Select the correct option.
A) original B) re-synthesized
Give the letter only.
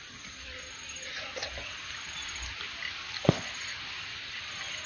A